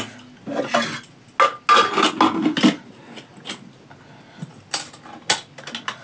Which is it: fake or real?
real